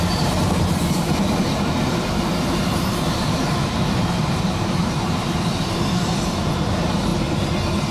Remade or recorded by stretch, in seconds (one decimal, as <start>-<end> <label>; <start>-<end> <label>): 0.0-7.1 remade; 7.1-7.9 recorded